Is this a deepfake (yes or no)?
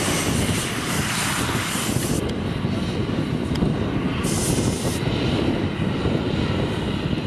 no